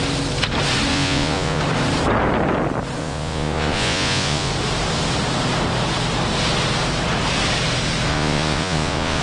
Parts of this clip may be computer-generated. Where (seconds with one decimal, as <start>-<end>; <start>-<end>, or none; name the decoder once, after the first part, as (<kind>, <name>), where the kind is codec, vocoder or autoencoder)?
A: 0.9-1.6 (vocoder, Vocos); 3.0-4.5; 8.1-9.2